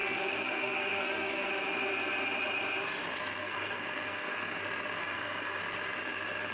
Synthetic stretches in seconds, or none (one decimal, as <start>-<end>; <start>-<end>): 0.0-1.5; 3.4-4.6; 5.0-5.6